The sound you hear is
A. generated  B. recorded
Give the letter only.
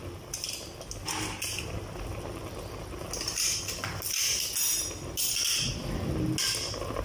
B